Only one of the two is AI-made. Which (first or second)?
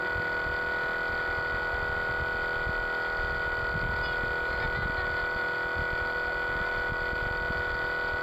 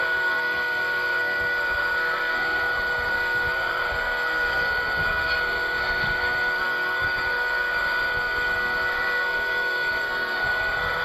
second